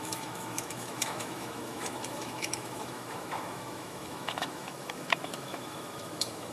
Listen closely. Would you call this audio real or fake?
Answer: fake